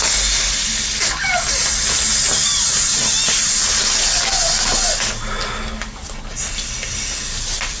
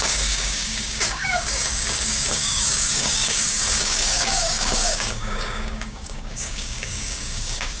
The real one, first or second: first